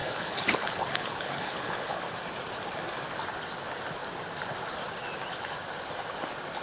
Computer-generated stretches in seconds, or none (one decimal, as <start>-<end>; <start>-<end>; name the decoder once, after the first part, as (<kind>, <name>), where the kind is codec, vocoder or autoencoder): 0.0-2.0 (codec, HILCodec)